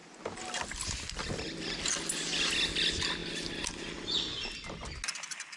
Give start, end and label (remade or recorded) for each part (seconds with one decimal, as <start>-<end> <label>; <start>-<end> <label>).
0.0-5.6 recorded